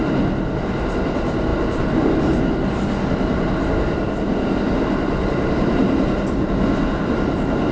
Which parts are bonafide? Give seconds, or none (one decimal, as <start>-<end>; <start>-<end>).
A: 0.0-7.7